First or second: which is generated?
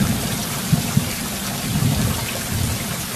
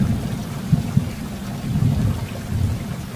first